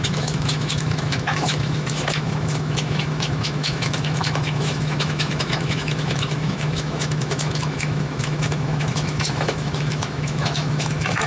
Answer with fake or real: fake